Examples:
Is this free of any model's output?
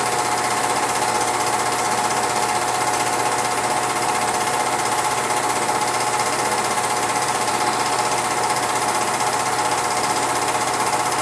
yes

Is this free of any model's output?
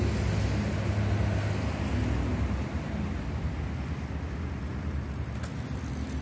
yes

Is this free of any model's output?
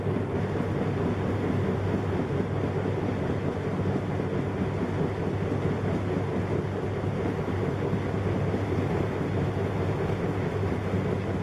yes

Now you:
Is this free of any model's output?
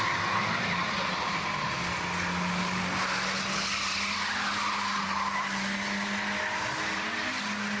yes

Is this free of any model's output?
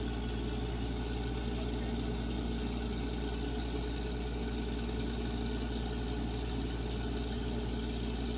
yes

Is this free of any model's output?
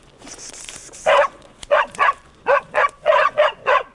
no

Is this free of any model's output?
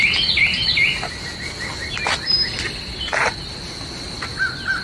yes